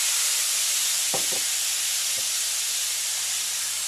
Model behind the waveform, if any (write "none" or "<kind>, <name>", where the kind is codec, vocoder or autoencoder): none